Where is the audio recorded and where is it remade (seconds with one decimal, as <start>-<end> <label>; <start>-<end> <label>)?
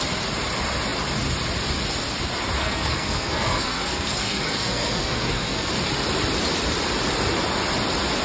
0.0-2.6 recorded; 2.6-5.7 remade; 5.7-8.2 recorded